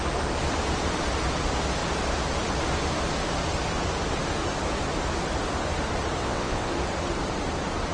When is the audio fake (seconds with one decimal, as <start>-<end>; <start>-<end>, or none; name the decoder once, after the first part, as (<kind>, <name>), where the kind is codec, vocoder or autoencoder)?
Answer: 6.2-6.7 (vocoder, WaveNeXt)